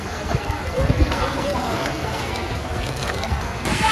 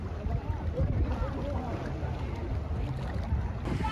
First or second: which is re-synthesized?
first